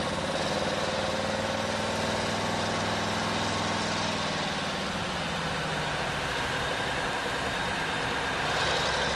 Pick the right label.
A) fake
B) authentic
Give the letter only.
B